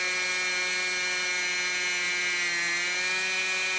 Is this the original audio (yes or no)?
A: yes